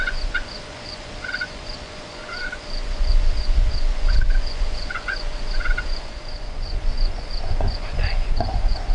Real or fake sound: fake